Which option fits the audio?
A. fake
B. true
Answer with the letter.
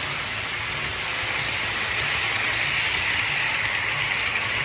B